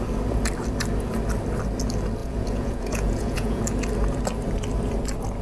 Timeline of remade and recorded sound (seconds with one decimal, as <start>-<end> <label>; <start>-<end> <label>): 0.0-2.2 recorded; 2.2-3.6 remade; 3.6-5.4 recorded